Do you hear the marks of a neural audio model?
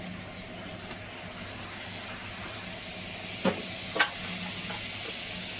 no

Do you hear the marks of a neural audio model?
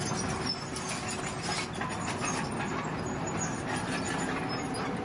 no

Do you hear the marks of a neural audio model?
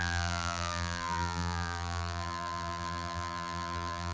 yes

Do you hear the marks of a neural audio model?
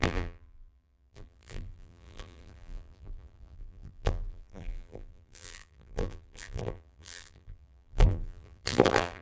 yes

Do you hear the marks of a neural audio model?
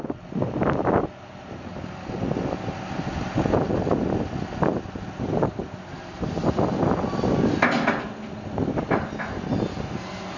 no